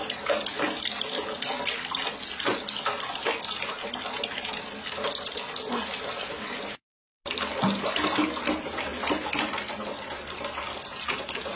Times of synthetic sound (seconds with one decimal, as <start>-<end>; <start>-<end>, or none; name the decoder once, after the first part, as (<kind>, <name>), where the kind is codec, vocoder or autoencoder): none